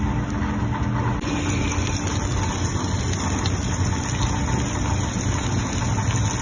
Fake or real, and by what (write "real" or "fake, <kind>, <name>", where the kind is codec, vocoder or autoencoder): real